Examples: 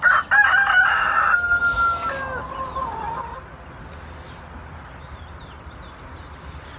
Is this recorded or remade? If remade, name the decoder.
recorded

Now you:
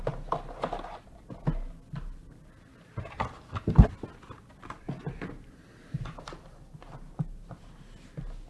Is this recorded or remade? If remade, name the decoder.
recorded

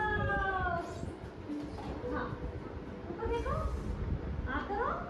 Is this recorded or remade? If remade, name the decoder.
recorded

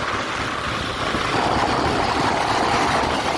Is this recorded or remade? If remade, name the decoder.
recorded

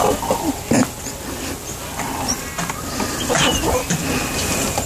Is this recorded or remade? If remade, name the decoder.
recorded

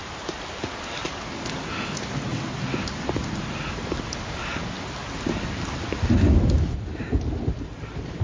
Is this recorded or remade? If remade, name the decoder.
recorded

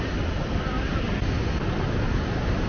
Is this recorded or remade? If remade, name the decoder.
remade, vocoder, BigVGAN v2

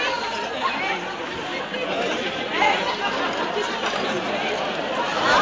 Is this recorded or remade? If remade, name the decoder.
recorded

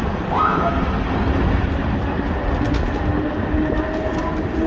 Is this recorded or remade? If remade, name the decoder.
recorded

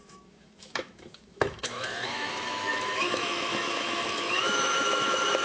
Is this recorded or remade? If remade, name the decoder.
remade, autoencoder, DAC-VAE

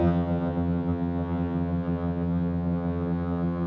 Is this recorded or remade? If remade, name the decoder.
remade, vocoder, HiFi-GAN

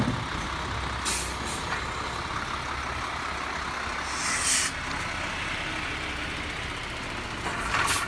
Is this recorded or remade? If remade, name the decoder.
recorded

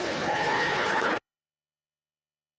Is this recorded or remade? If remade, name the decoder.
remade, codec, HILCodec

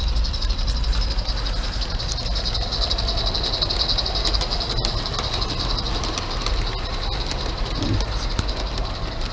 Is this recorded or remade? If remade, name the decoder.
recorded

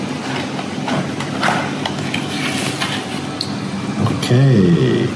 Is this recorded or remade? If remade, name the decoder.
recorded